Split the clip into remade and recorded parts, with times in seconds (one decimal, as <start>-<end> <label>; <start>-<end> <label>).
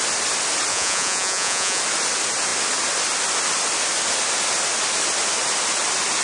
0.0-0.7 recorded; 0.7-1.8 remade; 1.8-6.2 recorded